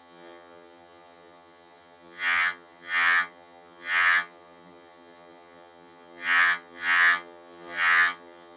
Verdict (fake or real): fake